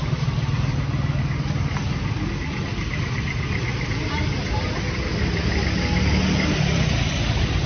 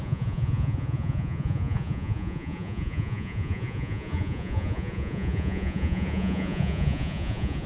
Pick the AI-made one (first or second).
second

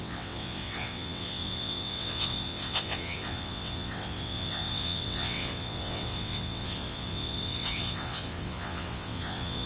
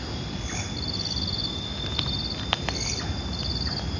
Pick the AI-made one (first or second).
first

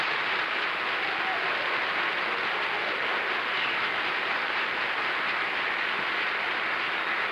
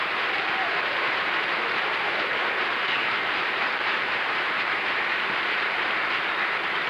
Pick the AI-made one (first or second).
second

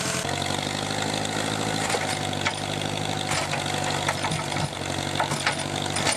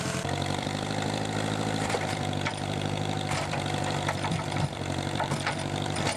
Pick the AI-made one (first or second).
second